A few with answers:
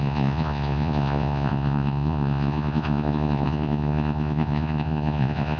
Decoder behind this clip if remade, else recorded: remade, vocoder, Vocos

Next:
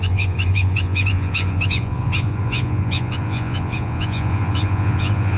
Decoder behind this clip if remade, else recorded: remade, vocoder, Vocos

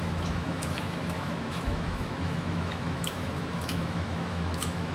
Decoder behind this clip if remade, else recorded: remade, autoencoder, DAC-VAE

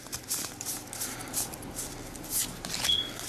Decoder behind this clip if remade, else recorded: recorded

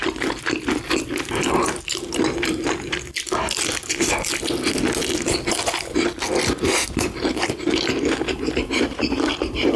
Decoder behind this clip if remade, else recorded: recorded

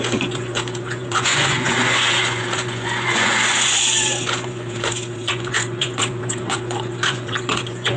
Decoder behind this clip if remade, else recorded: remade, vocoder, Vocos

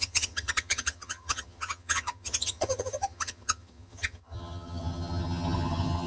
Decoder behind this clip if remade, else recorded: remade, vocoder, HiFi-GAN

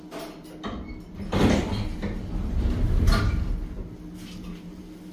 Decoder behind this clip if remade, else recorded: recorded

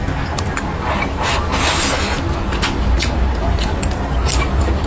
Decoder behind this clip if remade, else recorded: recorded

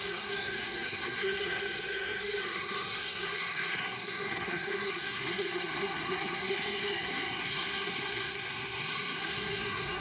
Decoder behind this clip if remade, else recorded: remade, codec, SNAC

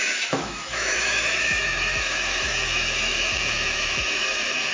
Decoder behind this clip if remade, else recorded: remade, autoencoder, DAC-VAE